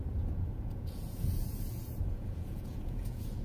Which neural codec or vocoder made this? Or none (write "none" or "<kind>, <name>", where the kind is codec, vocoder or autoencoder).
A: vocoder, Vocos